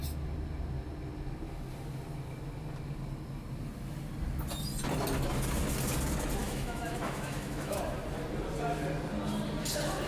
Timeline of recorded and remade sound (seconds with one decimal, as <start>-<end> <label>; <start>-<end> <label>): 0.0-6.4 recorded; 6.4-7.8 remade; 7.8-10.1 recorded